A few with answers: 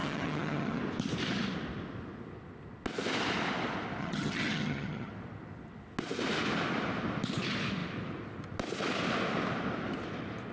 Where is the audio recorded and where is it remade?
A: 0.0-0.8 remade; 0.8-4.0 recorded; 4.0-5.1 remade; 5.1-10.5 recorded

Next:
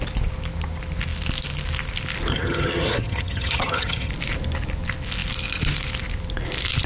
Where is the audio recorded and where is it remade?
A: 0.0-2.3 recorded; 2.3-4.1 remade; 4.1-6.9 recorded

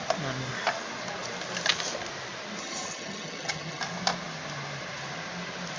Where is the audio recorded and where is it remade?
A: 0.0-2.6 recorded; 2.6-3.8 remade; 3.8-5.8 recorded

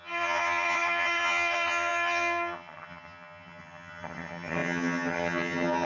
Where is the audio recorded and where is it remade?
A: 0.0-5.9 remade

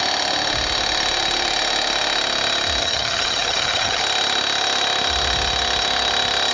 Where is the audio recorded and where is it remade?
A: 0.0-2.8 recorded; 2.8-4.0 remade; 4.0-6.5 recorded

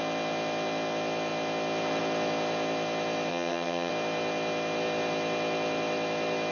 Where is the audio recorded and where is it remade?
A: 0.0-3.3 recorded; 3.3-3.9 remade; 3.9-6.5 recorded